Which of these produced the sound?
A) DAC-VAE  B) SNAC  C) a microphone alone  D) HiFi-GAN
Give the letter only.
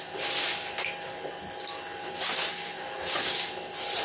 C